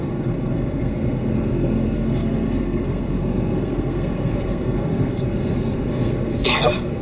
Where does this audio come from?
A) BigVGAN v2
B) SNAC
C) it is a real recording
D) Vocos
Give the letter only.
B